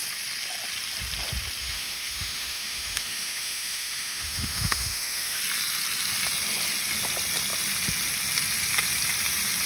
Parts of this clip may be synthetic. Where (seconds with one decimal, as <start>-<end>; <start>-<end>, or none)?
1.6-5.4